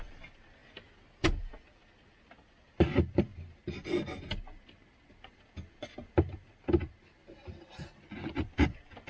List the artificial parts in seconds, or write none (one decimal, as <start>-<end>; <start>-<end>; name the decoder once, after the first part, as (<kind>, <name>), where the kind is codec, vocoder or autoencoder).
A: none